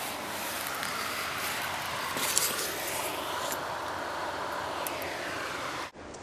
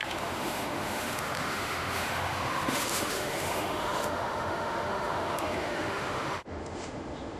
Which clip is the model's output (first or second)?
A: second